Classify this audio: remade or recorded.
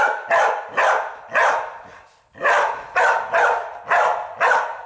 recorded